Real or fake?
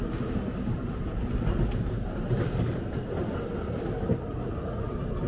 real